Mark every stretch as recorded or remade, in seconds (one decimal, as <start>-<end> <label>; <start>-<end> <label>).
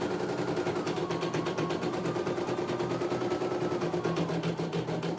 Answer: 0.0-1.0 recorded; 1.0-2.5 remade; 2.5-5.2 recorded